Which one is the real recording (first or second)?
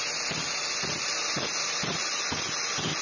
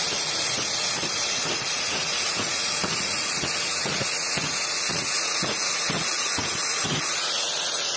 first